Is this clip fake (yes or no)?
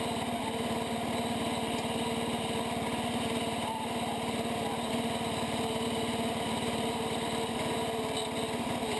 no